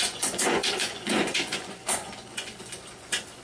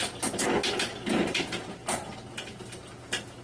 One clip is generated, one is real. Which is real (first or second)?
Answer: second